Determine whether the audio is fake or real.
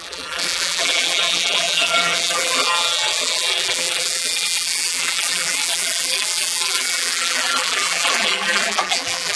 fake